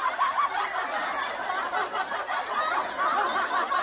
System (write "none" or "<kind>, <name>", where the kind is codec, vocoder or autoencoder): none